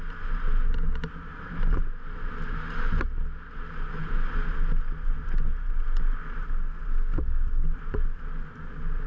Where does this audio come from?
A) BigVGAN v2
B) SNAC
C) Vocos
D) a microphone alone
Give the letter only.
D